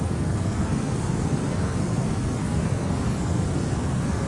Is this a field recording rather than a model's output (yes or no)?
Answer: no